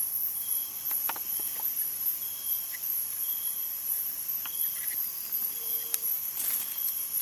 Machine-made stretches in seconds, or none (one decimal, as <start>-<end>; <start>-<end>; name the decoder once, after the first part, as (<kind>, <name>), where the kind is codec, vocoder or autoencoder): none

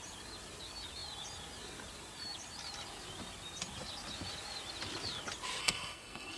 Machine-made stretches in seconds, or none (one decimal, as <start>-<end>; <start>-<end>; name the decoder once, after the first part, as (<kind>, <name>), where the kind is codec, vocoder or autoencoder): 5.6-6.4 (codec, SNAC)

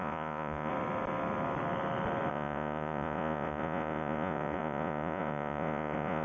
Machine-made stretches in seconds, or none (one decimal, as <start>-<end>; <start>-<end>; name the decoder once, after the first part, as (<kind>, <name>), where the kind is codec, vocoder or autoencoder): 0.0-0.7 (vocoder, Vocos); 2.3-6.2

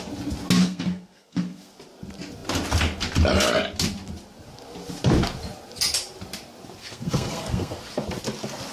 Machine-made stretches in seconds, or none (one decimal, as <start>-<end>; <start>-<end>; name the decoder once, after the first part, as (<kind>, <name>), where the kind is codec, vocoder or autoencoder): 0.6-1.7 (codec, SNAC); 6.8-7.8

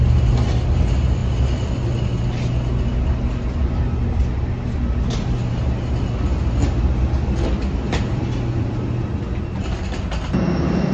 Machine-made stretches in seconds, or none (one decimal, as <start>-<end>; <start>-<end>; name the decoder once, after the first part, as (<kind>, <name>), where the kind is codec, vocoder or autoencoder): none

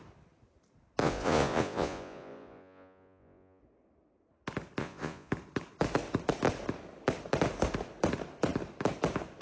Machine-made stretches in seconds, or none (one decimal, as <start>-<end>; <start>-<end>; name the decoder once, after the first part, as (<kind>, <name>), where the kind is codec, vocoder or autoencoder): 1.0-3.6 (vocoder, Vocos); 4.8-5.3

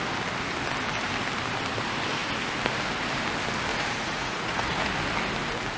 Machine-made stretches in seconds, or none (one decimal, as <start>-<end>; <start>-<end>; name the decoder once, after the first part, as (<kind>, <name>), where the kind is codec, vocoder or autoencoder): 3.7-4.9 (vocoder, Vocos)